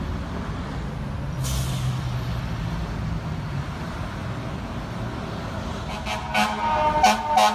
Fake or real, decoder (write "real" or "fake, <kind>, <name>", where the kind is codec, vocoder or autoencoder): real